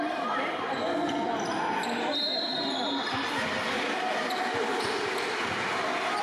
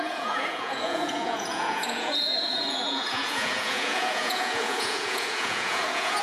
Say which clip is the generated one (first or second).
second